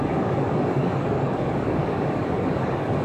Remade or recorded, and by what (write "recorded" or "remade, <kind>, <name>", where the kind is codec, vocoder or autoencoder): remade, codec, DAC